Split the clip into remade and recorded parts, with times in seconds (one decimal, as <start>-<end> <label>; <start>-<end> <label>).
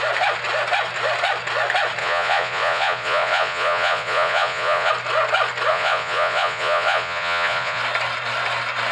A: 0.0-2.0 recorded; 2.0-4.9 remade; 4.9-5.7 recorded; 5.7-7.8 remade; 7.8-8.9 recorded